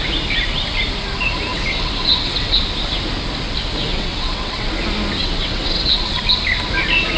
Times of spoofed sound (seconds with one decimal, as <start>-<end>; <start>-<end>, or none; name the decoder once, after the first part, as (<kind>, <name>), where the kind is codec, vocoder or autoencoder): 1.5-2.6 (vocoder, WaveNeXt); 3.9-4.7; 5.2-6.2